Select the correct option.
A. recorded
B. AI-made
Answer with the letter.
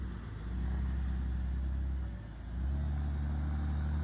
A